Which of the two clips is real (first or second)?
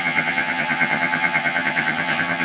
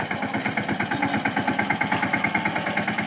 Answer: second